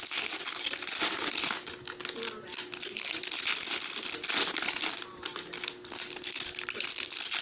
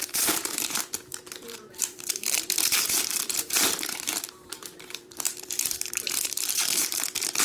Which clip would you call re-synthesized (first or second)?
second